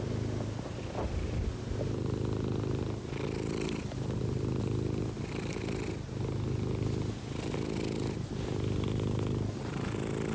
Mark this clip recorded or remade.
recorded